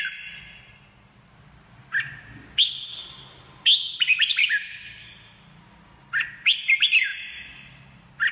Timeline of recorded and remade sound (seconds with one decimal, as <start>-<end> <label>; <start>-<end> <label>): 0.0-8.3 recorded

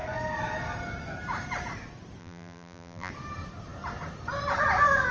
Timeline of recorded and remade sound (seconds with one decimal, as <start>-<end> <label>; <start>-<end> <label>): 0.0-2.2 recorded; 2.2-3.1 remade; 3.1-5.1 recorded

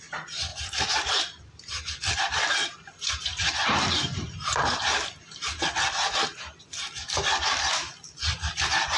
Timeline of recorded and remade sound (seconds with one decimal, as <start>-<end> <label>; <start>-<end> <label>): 0.0-0.5 recorded; 0.5-2.2 remade; 2.2-2.6 recorded; 2.6-5.1 remade; 5.1-9.0 recorded

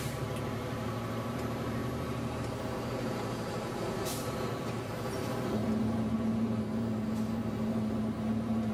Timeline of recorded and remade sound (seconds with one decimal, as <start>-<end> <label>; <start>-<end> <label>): 0.0-5.6 remade; 5.6-8.0 recorded; 8.0-8.7 remade

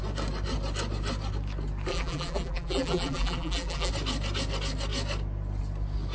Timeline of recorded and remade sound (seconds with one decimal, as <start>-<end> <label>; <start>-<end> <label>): 0.0-1.9 recorded; 1.9-3.9 remade; 3.9-6.1 recorded

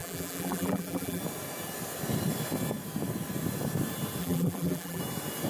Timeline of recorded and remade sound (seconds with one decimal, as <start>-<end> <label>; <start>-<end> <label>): 0.0-1.2 remade; 1.2-4.2 recorded; 4.2-5.0 remade; 5.0-5.5 recorded